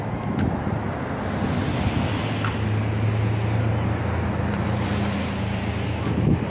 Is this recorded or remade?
recorded